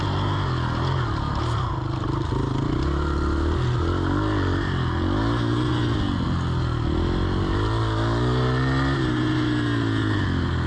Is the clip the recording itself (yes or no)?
yes